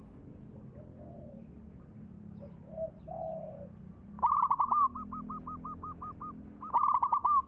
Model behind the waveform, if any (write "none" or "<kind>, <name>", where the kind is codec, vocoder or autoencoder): none